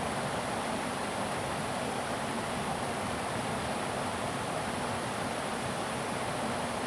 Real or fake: real